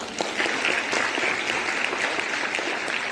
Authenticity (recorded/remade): recorded